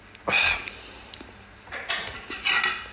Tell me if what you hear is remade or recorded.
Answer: recorded